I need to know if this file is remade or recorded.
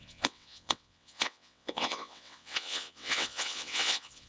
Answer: remade